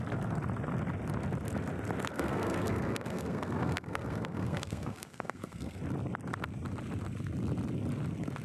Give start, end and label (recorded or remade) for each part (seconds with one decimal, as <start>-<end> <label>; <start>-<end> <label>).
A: 0.0-2.1 recorded; 2.1-5.8 remade; 5.8-8.4 recorded